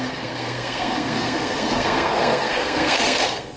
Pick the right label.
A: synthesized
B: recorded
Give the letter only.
A